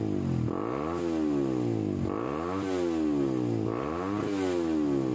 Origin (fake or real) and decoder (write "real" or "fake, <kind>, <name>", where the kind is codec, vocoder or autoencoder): real